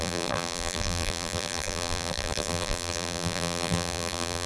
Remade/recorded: remade